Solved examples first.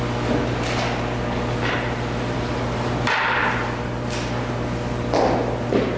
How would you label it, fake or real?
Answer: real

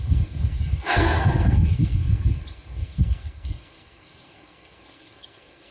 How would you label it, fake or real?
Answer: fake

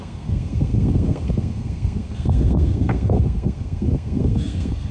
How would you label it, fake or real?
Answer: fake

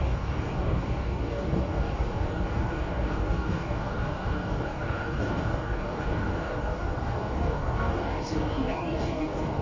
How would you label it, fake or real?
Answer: fake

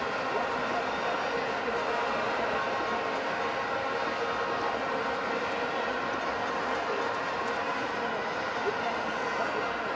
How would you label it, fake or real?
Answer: real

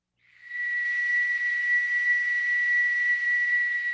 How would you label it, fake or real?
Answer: real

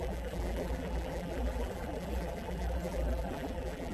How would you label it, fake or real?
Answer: fake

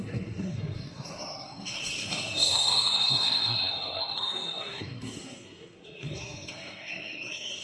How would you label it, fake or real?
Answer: fake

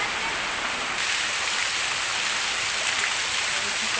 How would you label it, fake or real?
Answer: real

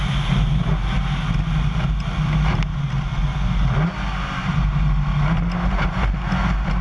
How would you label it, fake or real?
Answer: real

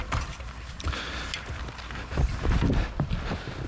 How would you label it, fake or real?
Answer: real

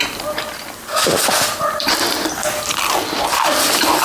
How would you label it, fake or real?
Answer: fake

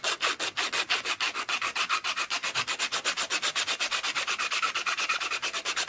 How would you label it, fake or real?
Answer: real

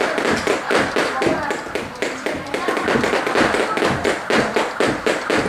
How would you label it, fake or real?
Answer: real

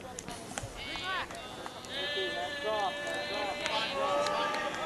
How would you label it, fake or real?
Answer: real